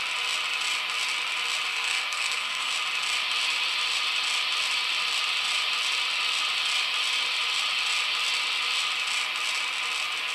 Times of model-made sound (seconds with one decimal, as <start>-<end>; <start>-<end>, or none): 1.7-2.7